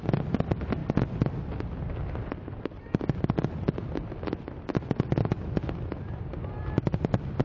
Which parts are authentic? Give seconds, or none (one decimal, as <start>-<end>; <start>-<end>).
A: 0.0-7.4